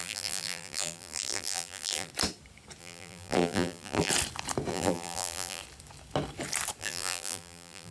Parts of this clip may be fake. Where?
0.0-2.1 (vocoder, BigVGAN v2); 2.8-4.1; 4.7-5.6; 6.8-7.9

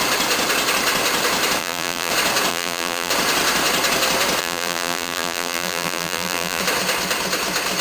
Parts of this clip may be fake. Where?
1.6-2.1 (vocoder, BigVGAN v2); 2.5-3.1; 4.4-6.6

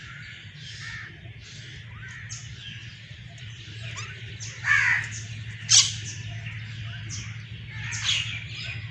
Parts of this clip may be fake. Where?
2.8-4.1 (vocoder, BigVGAN v2)